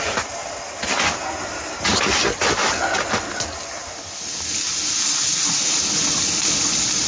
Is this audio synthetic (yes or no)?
no